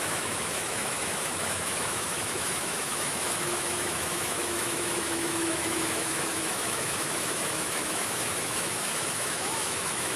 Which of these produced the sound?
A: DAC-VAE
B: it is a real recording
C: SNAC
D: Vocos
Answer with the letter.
A